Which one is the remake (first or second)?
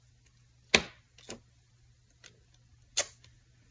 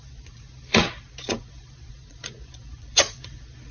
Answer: second